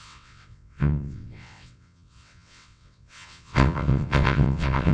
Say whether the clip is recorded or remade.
remade